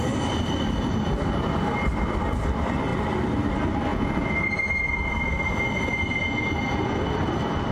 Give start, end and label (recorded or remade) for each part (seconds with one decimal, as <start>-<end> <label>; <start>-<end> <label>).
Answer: 0.0-3.9 recorded; 3.9-4.8 remade; 4.8-7.7 recorded